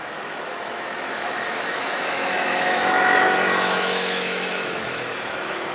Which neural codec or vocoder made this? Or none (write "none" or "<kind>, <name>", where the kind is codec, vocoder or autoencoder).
autoencoder, DAC-VAE